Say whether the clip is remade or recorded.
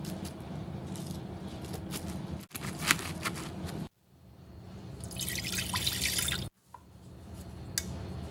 recorded